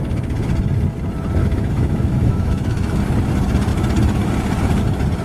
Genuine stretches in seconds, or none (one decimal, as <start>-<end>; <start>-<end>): 0.0-1.4; 3.0-5.2